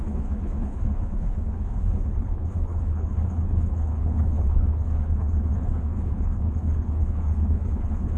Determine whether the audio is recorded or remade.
remade